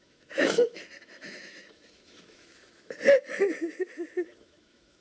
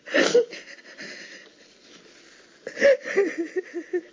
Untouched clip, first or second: second